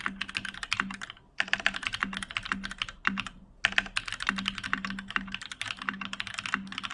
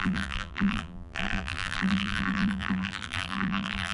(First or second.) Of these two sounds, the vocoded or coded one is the second